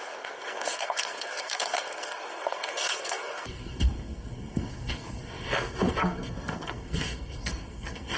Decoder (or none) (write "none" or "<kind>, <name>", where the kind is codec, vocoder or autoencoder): codec, SNAC